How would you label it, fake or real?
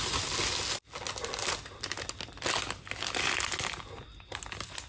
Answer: real